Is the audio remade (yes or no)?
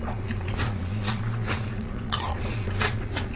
yes